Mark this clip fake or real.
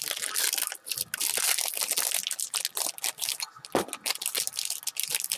real